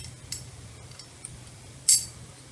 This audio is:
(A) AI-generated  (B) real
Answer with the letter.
B